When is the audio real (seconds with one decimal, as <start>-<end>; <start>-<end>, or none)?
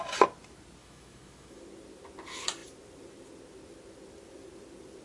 0.0-0.8; 1.6-5.0